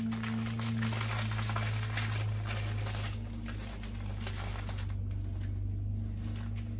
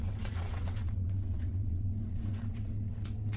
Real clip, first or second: first